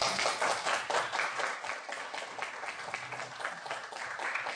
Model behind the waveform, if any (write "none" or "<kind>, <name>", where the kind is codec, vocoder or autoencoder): none